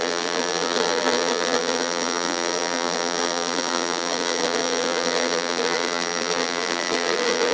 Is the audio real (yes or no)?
no